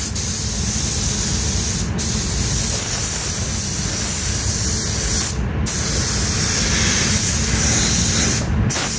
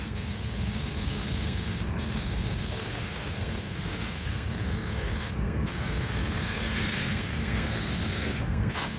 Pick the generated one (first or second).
second